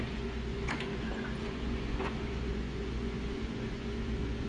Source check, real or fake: fake